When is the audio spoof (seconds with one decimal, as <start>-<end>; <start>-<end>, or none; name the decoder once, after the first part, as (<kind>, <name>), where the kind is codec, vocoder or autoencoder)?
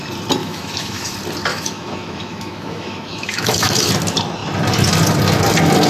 0.4-1.1 (autoencoder, DAC-VAE); 1.5-3.9